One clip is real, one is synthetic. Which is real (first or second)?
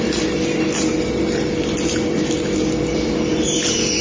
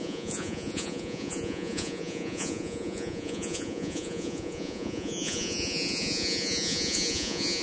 first